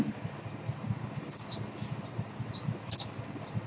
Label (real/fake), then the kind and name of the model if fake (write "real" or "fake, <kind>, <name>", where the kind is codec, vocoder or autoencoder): real